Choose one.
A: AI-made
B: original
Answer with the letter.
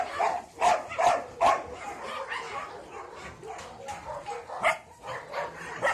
B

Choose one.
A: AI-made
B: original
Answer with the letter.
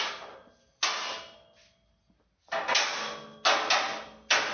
B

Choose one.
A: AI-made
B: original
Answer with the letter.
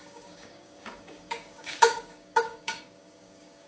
A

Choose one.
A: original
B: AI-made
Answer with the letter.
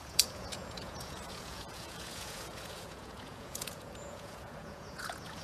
B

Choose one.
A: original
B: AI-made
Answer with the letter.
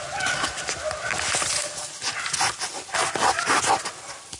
A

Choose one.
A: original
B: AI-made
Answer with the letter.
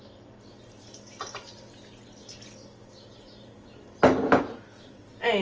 A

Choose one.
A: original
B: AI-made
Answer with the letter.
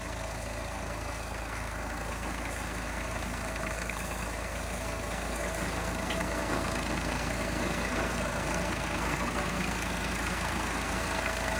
B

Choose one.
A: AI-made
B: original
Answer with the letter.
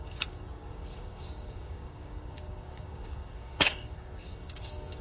A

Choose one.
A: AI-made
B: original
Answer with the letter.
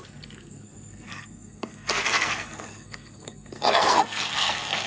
A